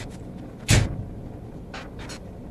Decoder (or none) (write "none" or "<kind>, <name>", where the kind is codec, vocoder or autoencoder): none